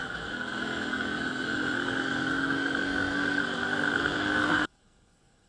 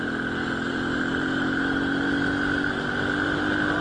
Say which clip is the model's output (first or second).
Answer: first